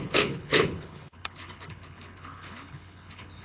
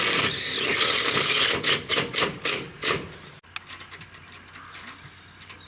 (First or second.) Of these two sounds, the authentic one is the second